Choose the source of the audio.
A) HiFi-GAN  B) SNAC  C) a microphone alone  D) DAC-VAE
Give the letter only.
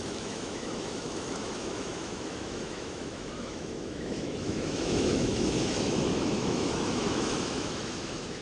D